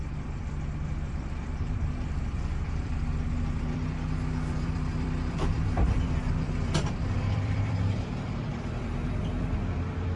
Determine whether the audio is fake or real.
fake